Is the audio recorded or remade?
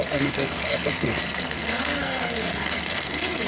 remade